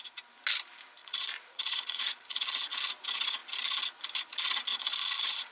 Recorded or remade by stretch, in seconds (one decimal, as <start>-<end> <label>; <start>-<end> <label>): 0.0-1.0 recorded; 1.0-2.9 remade; 2.9-4.7 recorded; 4.7-5.5 remade